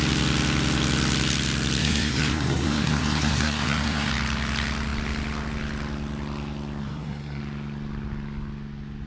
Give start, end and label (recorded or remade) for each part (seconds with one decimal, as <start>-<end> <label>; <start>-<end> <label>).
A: 0.0-1.8 recorded; 1.8-4.1 remade; 4.1-6.8 recorded; 6.8-7.4 remade; 7.4-9.1 recorded